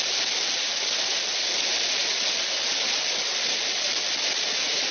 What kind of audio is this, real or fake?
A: real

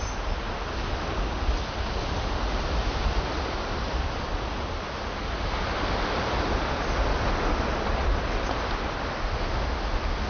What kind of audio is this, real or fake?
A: real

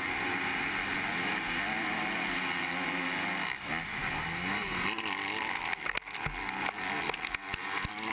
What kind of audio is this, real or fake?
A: real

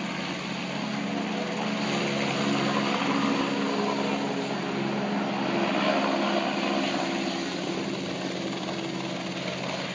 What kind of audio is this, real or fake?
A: real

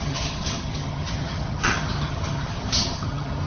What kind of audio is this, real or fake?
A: fake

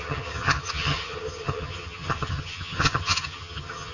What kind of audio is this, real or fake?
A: fake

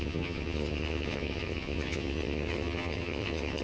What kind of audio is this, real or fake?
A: fake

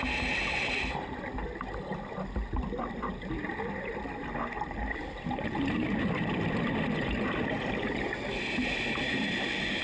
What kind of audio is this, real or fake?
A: real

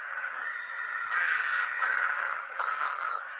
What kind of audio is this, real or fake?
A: fake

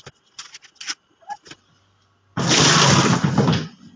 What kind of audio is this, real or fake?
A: real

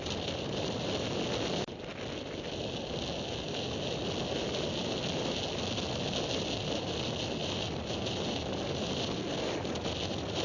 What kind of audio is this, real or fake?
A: real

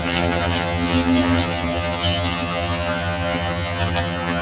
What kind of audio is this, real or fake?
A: fake